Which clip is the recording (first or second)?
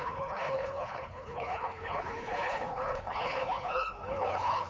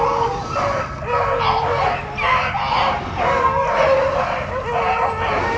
second